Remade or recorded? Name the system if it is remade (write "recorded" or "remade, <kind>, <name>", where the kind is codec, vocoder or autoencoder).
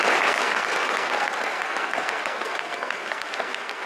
remade, codec, SNAC